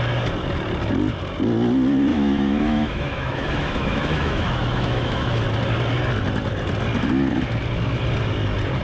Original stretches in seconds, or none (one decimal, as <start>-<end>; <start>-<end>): 0.0-2.1; 5.4-8.8